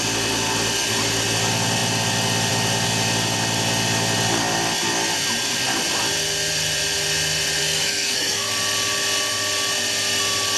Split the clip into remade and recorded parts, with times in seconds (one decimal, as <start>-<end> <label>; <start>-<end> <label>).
0.0-7.6 recorded; 7.6-8.5 remade; 8.5-10.6 recorded